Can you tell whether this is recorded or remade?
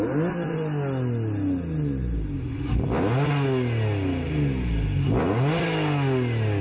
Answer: recorded